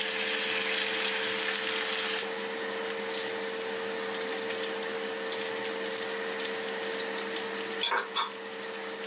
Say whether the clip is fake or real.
real